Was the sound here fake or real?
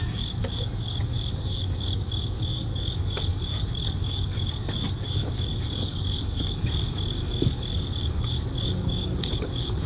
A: fake